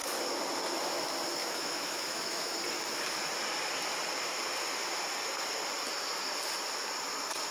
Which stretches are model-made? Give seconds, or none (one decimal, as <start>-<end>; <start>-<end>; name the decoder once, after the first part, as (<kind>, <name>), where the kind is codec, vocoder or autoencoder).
1.4-2.6 (autoencoder, DAC-VAE)